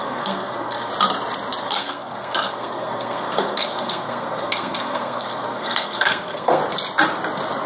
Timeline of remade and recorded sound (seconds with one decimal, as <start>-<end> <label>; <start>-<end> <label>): 0.0-0.9 remade; 0.9-1.6 recorded; 1.6-6.6 remade; 6.6-7.7 recorded